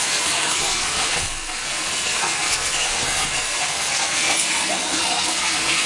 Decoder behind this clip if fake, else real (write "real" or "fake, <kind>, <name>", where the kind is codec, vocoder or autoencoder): fake, codec, SNAC